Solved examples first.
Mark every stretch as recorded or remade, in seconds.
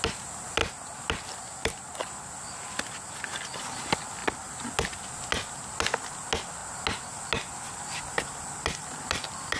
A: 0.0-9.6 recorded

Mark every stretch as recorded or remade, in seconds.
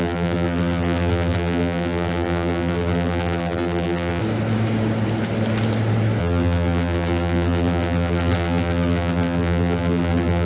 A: 0.0-4.2 remade; 4.2-6.2 recorded; 6.2-10.4 remade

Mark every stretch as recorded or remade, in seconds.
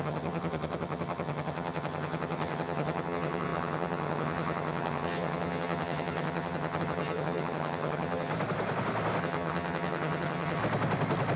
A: 0.0-8.3 remade; 8.3-9.2 recorded; 9.2-10.6 remade; 10.6-11.4 recorded